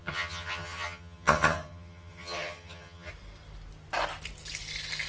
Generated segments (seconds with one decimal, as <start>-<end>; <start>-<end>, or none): 0.0-3.1

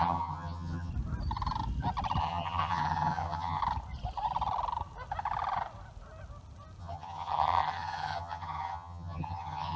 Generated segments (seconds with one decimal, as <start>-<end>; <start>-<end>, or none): 0.0-0.9; 2.2-3.6; 6.8-9.8

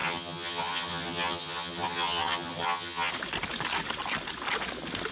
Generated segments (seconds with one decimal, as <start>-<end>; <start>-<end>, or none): 0.0-3.1

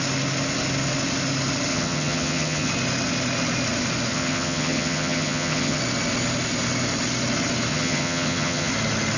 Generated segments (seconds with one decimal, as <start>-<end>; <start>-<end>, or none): 1.7-2.7; 4.1-5.8; 7.7-8.7

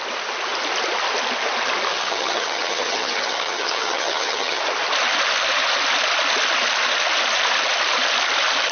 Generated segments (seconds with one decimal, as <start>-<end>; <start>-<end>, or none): 1.9-4.6

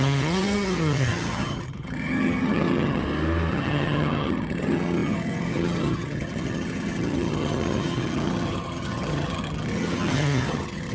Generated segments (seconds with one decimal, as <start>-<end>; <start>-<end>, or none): 0.0-3.0; 3.5-10.9